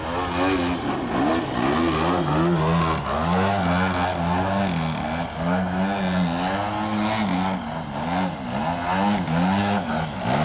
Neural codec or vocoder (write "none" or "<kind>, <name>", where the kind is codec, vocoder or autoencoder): none